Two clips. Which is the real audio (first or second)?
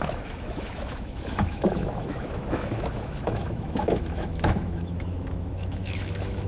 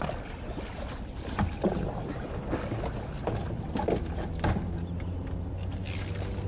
second